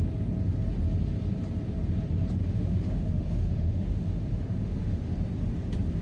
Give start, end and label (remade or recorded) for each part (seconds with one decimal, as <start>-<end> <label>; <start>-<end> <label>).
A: 0.0-2.4 recorded; 2.4-5.1 remade; 5.1-6.0 recorded